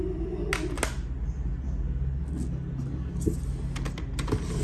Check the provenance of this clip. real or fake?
real